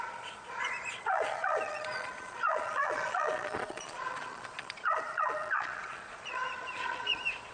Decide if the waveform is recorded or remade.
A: remade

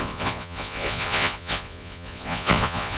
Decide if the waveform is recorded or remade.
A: remade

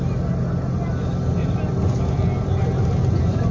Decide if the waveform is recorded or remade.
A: recorded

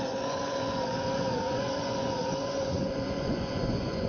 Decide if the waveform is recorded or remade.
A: remade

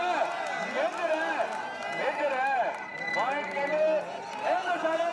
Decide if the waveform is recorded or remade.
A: recorded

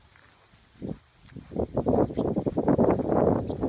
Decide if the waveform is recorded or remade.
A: recorded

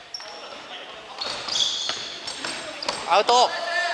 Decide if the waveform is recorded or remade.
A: recorded